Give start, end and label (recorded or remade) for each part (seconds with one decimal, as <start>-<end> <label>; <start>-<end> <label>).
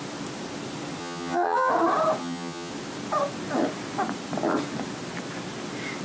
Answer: 0.0-1.0 recorded; 1.0-1.7 remade; 1.7-2.2 recorded; 2.2-2.7 remade; 2.7-6.0 recorded